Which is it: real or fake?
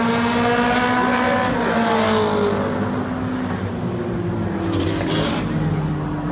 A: real